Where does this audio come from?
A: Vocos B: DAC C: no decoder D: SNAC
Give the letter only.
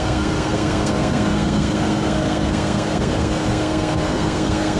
D